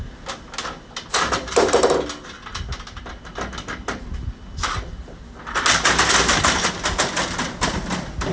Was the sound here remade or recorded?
recorded